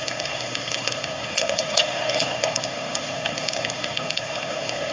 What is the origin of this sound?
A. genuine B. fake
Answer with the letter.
B